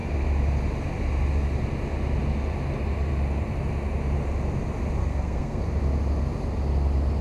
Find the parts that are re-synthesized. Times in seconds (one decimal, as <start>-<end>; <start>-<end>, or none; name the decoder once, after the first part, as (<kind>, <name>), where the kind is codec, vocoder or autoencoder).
5.0-5.6 (codec, SNAC)